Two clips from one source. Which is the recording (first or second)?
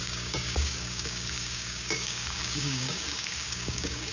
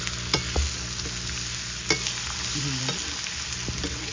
second